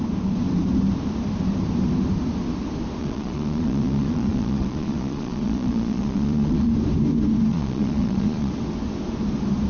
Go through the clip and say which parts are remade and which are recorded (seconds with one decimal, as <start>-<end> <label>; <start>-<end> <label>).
0.0-3.0 recorded; 3.0-6.7 remade; 6.7-7.5 recorded; 7.5-8.5 remade; 8.5-9.7 recorded